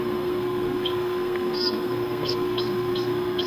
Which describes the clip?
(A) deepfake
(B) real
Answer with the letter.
A